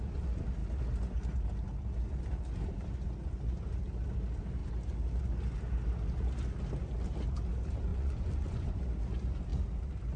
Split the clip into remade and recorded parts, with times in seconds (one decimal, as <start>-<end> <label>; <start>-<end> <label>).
0.0-7.9 recorded; 7.9-8.8 remade; 8.8-10.2 recorded

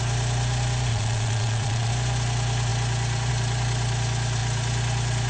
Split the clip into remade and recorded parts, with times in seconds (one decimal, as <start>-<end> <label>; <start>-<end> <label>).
0.0-0.9 recorded; 0.9-1.9 remade; 1.9-5.3 recorded

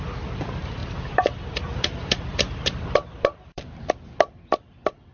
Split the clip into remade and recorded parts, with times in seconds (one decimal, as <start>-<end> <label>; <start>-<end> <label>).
0.0-0.8 recorded; 0.8-3.9 remade; 3.9-5.1 recorded